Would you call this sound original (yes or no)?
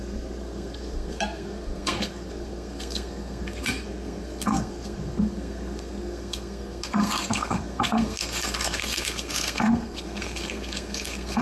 no